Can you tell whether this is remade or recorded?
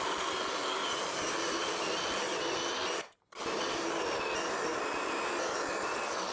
recorded